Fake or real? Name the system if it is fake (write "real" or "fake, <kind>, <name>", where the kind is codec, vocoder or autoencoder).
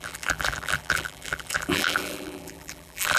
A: fake, vocoder, BigVGAN v2